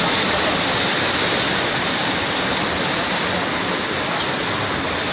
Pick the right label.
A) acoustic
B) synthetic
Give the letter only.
A